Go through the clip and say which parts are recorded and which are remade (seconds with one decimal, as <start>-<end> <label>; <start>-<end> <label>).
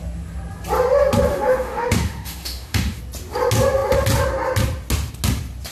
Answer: 0.0-1.3 recorded; 1.3-3.0 remade; 3.0-5.7 recorded